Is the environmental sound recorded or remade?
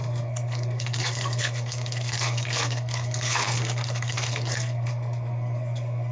remade